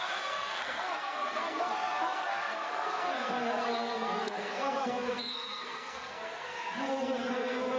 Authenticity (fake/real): fake